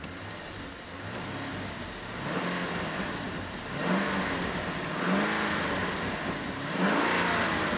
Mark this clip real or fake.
real